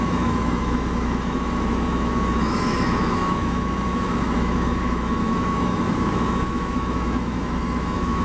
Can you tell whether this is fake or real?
fake